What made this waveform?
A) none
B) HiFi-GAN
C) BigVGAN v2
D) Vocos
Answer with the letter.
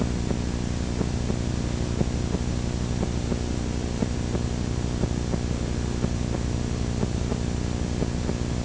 A